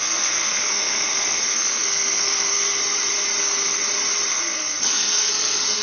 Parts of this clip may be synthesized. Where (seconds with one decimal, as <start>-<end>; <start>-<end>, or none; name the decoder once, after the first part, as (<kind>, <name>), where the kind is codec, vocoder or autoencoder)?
0.0-2.8 (codec, SNAC); 3.4-3.8; 4.3-5.8